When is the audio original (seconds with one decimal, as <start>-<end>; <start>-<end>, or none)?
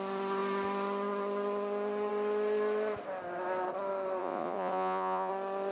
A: 0.0-4.2; 5.3-5.7